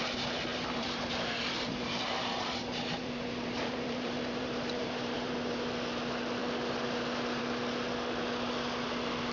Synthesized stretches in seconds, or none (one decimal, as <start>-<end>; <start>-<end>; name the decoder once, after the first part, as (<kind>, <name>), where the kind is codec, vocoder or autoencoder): 0.5-5.3 (vocoder, BigVGAN v2)